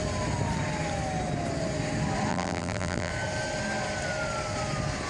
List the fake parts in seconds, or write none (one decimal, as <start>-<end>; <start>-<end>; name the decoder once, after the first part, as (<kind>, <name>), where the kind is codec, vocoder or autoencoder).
2.3-3.1 (vocoder, BigVGAN v2)